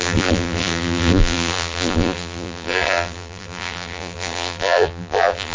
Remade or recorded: remade